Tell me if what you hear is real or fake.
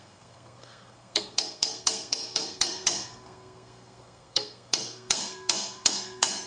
fake